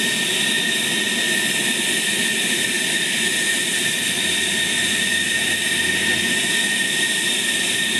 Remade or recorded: recorded